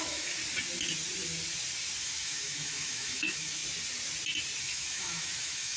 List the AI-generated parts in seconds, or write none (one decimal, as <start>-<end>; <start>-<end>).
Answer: 0.0-0.4; 2.0-3.6; 4.6-5.8